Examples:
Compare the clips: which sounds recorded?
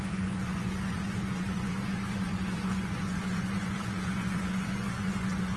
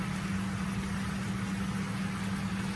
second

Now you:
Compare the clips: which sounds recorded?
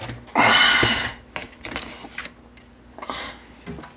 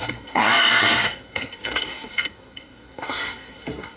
first